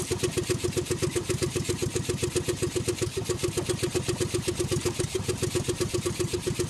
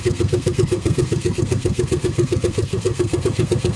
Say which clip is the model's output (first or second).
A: second